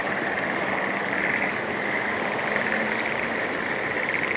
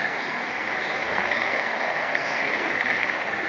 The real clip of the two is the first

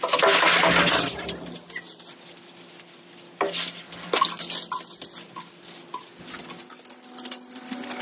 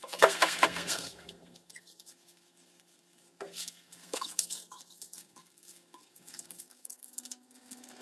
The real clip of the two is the first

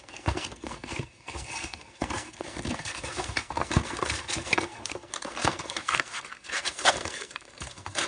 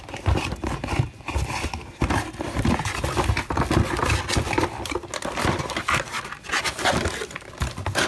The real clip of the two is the second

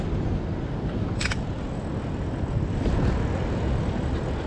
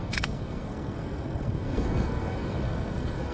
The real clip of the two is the first